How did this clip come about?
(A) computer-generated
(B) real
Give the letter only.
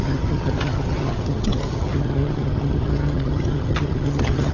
A